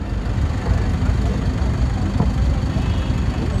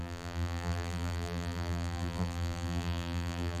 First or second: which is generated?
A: second